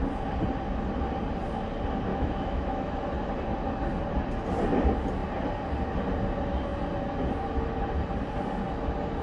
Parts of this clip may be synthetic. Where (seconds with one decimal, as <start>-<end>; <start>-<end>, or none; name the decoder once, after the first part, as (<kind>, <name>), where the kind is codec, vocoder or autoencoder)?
2.1-2.9 (autoencoder, DAC-VAE)